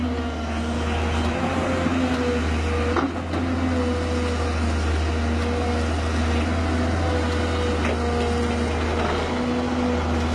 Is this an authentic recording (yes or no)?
yes